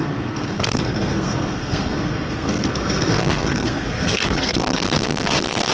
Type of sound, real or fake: fake